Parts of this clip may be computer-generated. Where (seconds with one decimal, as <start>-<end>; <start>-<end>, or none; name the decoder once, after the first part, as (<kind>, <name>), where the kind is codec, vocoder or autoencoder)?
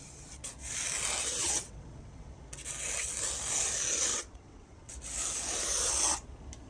1.2-2.4 (vocoder, WaveNeXt); 4.1-4.9